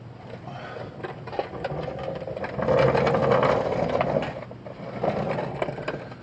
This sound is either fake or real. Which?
real